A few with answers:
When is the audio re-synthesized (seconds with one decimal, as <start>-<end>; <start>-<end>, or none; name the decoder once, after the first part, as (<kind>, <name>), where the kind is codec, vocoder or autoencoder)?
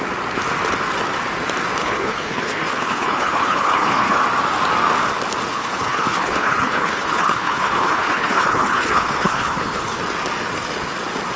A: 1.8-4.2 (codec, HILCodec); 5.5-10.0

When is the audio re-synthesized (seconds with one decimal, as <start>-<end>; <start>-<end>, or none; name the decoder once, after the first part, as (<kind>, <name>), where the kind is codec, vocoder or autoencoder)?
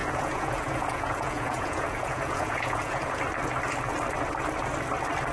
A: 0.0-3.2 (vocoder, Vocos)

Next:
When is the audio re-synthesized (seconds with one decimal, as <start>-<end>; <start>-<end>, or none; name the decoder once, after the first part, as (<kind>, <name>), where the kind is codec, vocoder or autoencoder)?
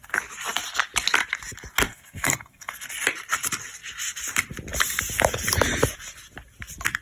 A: 1.9-2.9 (codec, SNAC)